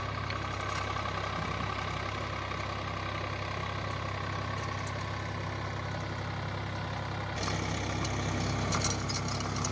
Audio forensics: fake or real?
real